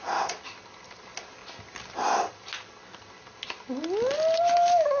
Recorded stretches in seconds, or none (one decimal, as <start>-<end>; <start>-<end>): 0.0-5.0